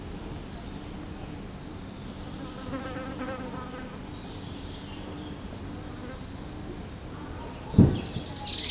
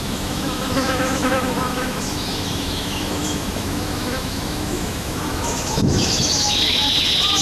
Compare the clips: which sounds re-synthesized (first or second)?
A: second